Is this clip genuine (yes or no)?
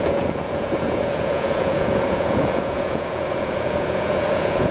no